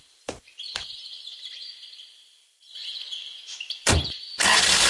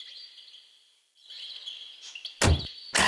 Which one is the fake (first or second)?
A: first